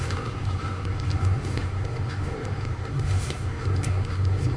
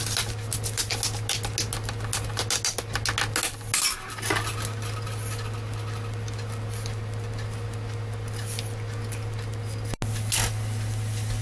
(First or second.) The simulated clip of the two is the first